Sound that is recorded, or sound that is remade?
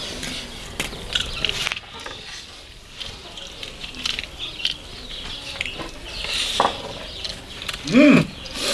recorded